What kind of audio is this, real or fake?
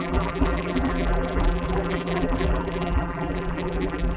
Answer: fake